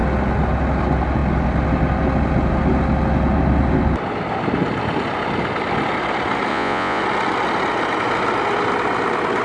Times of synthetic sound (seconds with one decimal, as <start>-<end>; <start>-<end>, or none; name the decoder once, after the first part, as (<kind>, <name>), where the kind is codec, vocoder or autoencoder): 6.5-7.0 (vocoder, Vocos)